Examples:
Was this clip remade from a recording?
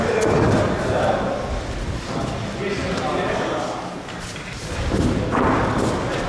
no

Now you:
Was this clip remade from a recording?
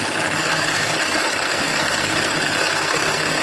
yes